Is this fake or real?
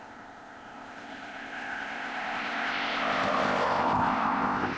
fake